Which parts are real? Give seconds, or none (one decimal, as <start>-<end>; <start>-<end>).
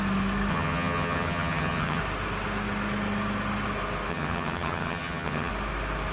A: 0.0-0.5; 2.0-4.1; 5.5-6.1